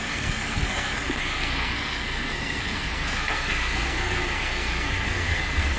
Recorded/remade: remade